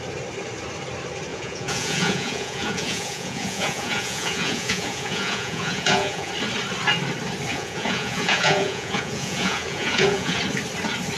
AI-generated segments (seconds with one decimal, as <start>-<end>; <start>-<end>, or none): 1.3-6.3; 7.5-10.4